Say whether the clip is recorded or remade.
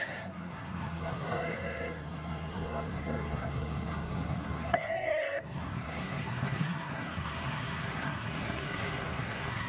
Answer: remade